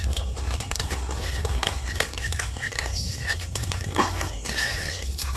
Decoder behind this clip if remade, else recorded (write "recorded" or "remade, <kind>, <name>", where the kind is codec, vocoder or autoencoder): remade, codec, SNAC